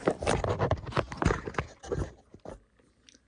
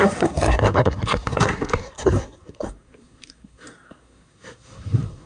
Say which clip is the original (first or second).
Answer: first